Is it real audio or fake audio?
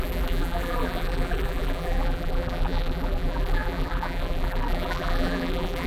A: fake